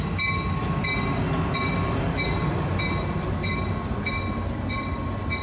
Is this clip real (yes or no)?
yes